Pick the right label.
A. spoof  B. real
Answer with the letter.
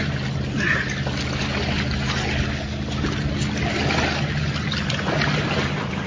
B